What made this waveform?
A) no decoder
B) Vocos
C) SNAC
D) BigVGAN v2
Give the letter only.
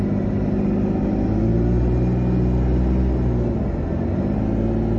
A